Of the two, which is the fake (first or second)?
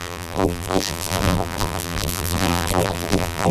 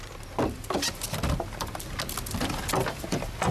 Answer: first